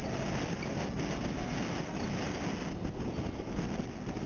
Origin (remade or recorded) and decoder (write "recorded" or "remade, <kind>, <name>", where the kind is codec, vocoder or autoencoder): recorded